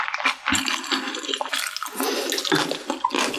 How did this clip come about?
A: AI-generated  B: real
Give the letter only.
B